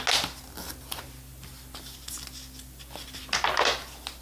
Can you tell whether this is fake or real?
real